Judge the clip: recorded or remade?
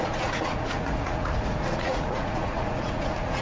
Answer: remade